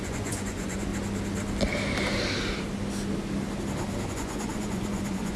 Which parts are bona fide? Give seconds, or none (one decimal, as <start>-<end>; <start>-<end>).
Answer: 0.9-4.1

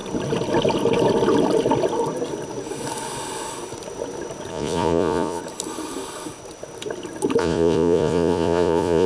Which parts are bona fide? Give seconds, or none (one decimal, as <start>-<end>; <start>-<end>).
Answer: 0.0-4.5; 5.4-7.4